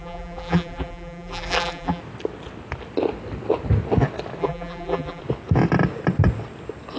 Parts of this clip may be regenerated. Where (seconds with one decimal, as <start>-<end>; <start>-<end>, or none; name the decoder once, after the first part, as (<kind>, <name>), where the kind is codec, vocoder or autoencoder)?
0.0-2.0 (vocoder, BigVGAN v2); 4.4-5.2